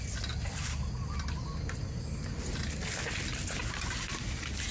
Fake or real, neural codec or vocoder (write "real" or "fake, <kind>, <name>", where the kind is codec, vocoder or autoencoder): real